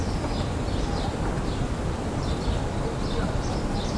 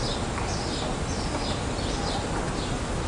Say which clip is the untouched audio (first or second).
second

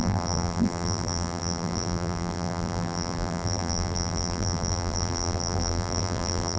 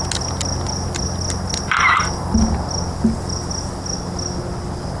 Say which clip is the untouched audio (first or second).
second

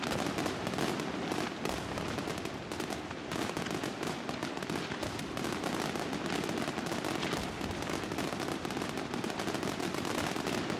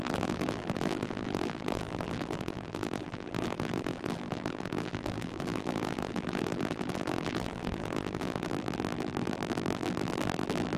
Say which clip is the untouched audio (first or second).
first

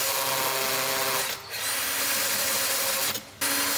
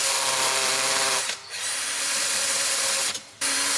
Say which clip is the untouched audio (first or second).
first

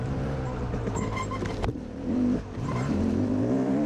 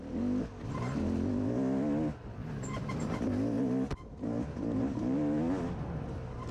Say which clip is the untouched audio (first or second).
second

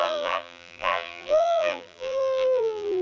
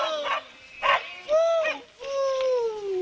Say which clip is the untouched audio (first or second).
second